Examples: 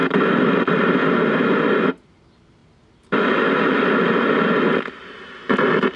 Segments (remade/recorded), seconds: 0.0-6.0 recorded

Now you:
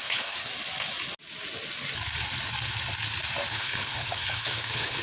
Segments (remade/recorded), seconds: 0.0-0.5 remade; 0.5-3.5 recorded; 3.5-5.0 remade

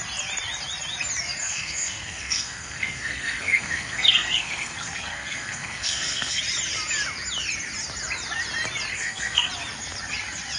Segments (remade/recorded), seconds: 0.0-1.4 recorded; 1.4-6.4 remade; 6.4-8.9 recorded; 8.9-9.5 remade; 9.5-10.6 recorded

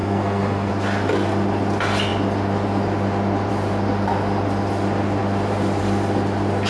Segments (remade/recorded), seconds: 0.0-0.7 remade; 0.7-6.7 recorded

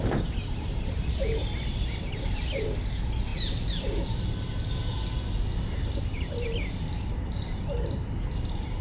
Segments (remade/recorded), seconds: 0.0-8.8 recorded

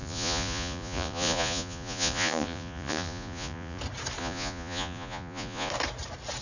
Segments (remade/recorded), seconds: 0.0-3.8 remade; 3.8-4.2 recorded; 4.2-5.7 remade; 5.7-6.4 recorded

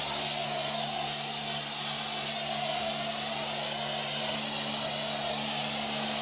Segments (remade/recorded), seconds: 0.0-6.2 recorded